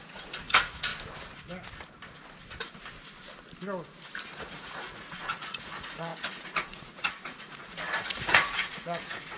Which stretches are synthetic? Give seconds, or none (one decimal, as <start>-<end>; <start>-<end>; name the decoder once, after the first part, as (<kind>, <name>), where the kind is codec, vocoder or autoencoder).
0.0-0.9 (vocoder, Vocos); 4.4-9.4